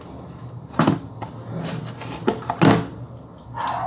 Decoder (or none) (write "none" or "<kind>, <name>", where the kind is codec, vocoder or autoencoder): none